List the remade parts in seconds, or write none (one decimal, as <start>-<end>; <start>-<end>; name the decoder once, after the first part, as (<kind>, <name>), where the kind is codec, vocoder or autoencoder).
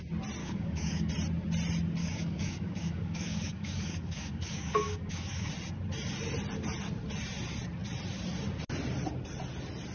0.4-1.1 (codec, DAC); 2.0-5.5